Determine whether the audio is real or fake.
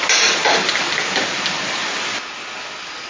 real